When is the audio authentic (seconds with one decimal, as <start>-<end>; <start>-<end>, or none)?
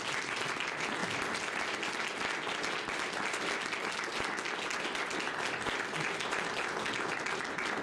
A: 0.0-7.8